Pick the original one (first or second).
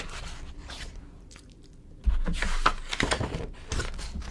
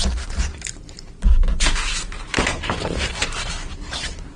first